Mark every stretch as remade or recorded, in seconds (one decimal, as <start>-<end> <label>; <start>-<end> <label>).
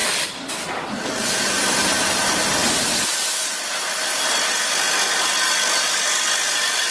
0.0-0.9 remade; 0.9-6.9 recorded